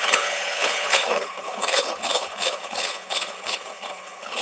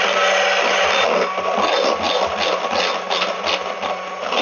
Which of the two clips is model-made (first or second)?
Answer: first